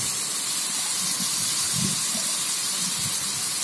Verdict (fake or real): fake